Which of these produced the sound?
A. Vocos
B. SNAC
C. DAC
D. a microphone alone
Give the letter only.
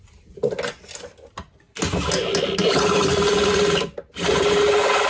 D